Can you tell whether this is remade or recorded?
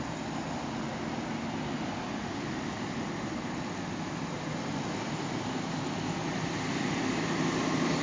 recorded